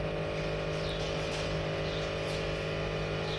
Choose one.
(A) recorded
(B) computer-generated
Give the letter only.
A